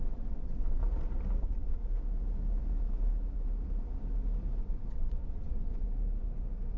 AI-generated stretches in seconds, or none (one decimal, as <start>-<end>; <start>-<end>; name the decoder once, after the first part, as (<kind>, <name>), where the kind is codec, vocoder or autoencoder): 0.0-0.8 (vocoder, WaveNeXt); 1.4-1.8; 4.6-5.7